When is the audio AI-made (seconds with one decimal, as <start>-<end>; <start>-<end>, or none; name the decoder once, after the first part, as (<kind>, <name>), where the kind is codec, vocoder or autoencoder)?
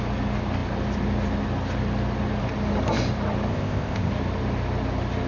3.5-4.1 (codec, ZipCodec)